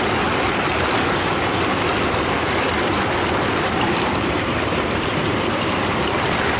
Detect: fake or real real